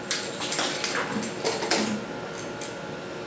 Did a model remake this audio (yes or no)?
no